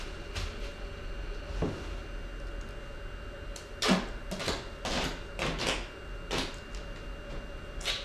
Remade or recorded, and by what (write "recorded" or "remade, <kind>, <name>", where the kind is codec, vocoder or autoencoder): recorded